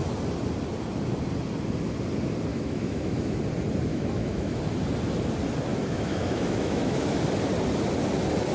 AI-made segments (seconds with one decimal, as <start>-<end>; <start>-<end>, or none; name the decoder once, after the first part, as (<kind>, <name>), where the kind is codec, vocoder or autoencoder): 2.5-3.4 (autoencoder, DAC-VAE); 3.9-4.6; 5.7-7.2